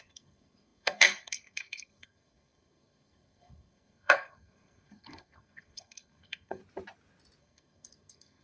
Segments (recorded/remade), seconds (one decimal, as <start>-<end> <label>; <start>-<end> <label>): 0.0-6.6 remade; 6.6-7.4 recorded; 7.4-8.4 remade